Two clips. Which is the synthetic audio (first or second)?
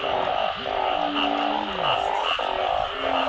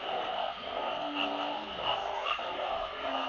second